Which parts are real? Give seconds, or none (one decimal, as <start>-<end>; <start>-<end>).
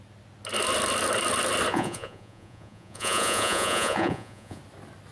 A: 0.0-1.7; 4.6-5.1